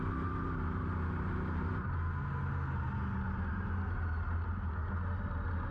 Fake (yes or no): no